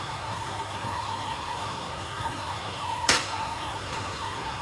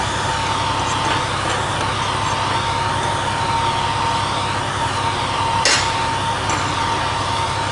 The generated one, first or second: first